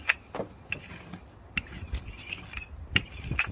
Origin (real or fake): real